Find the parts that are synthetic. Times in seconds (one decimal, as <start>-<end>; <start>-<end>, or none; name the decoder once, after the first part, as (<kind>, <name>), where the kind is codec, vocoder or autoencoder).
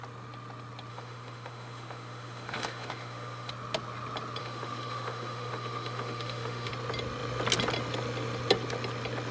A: 0.9-3.5 (autoencoder, DAC-VAE); 4.4-6.7